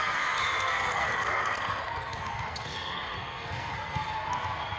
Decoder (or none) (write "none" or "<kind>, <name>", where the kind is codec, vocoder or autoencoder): codec, SNAC